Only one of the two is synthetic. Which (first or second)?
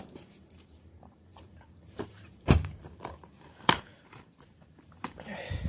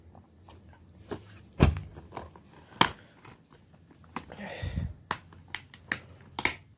first